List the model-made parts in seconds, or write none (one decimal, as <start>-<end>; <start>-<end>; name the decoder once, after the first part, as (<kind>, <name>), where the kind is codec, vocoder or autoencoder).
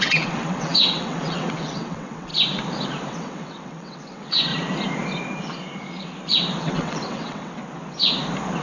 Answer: 0.0-2.3 (vocoder, WaveNeXt); 3.1-4.5; 6.6-7.6